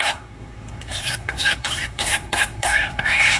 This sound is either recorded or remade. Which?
remade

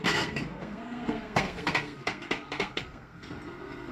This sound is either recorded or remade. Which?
remade